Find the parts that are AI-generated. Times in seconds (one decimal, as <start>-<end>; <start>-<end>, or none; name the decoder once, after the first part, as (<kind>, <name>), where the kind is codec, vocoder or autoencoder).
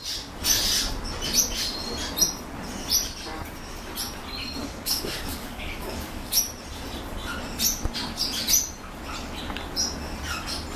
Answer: 4.6-6.4 (codec, DAC)